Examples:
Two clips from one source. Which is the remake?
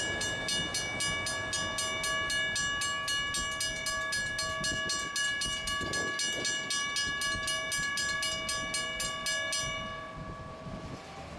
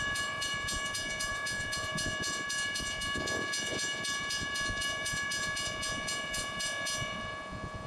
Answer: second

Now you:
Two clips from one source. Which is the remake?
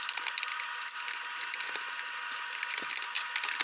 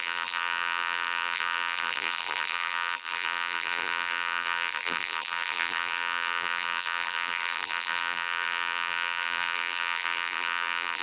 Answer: second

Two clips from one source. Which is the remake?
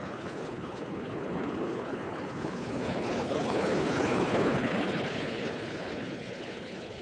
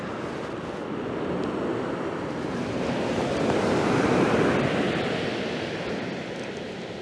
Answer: first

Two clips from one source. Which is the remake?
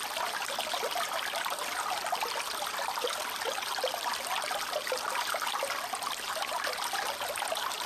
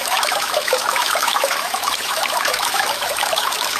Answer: second